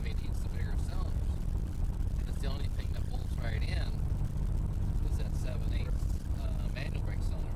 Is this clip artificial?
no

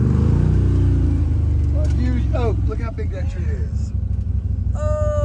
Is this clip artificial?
no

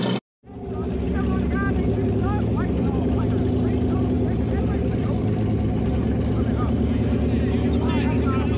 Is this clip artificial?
no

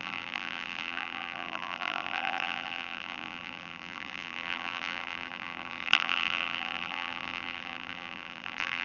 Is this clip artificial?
yes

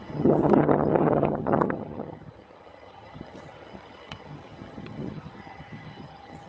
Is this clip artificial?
yes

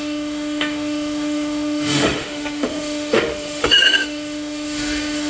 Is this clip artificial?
yes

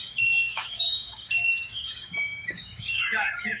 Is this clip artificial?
yes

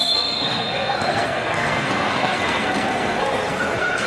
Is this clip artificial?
yes